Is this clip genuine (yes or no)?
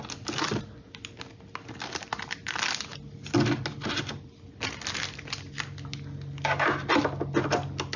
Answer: yes